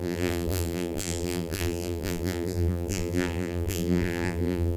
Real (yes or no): no